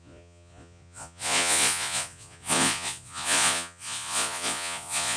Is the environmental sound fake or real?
fake